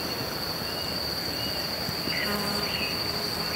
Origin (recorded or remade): recorded